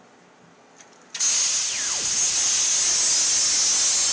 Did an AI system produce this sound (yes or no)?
no